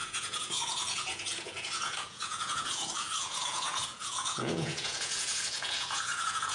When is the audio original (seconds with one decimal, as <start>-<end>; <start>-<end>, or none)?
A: none